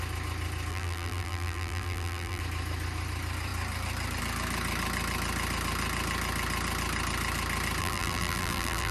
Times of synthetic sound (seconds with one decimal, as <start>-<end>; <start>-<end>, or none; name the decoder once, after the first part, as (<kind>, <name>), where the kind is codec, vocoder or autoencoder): 0.7-2.4 (vocoder, BigVGAN v2); 7.8-8.9